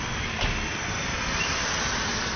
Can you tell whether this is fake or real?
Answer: real